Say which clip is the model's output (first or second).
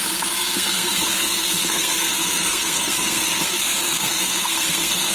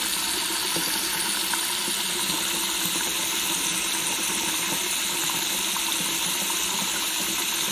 first